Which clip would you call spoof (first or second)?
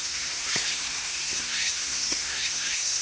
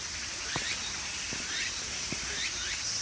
first